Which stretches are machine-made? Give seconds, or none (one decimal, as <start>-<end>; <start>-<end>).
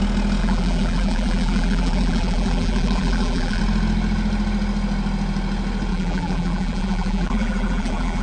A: 0.4-3.6; 5.9-8.2